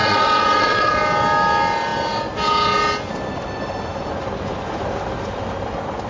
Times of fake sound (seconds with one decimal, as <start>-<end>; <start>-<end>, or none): 0.0-0.9